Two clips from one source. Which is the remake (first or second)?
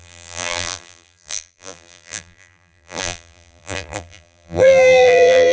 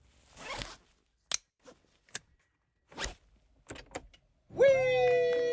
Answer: first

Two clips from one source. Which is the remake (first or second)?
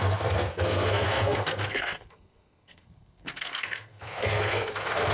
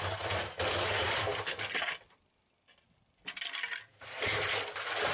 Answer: first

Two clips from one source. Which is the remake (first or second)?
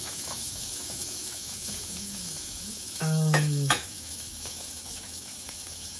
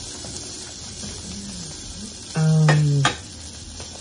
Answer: first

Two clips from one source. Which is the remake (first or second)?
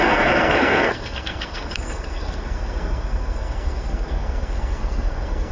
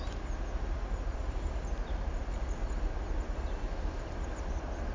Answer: first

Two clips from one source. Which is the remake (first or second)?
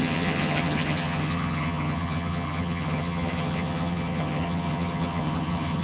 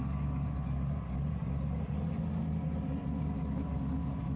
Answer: first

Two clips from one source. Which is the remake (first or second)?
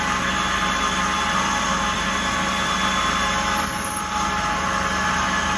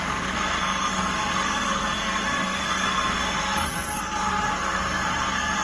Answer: second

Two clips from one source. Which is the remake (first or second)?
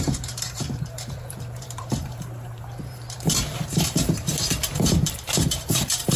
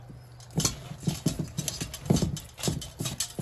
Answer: first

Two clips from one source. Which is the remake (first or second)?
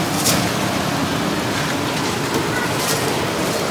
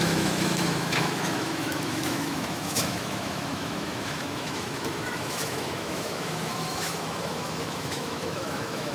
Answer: second